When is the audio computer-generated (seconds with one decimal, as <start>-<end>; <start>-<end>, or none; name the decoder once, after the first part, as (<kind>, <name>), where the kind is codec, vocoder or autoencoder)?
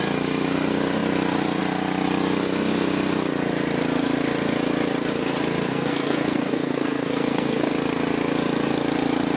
5.7-7.7 (codec, SNAC)